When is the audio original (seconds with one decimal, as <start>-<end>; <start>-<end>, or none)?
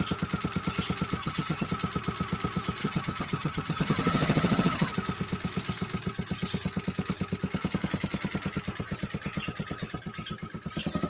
0.0-1.2; 1.7-2.8; 4.9-11.1